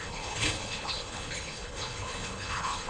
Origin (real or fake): fake